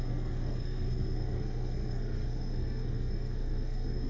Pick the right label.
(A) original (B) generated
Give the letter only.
B